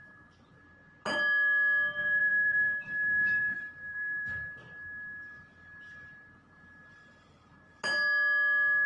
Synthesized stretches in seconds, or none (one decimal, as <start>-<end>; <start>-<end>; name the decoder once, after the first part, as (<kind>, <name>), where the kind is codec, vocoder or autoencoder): 2.0-4.6 (vocoder, BigVGAN v2)